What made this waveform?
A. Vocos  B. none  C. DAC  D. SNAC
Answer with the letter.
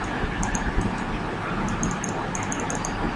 B